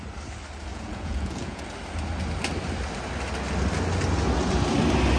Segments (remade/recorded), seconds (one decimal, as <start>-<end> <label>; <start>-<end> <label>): 0.0-0.7 recorded; 0.7-1.6 remade; 1.6-5.2 recorded